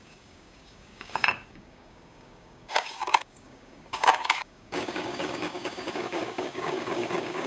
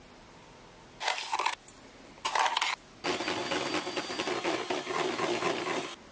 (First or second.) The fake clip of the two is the first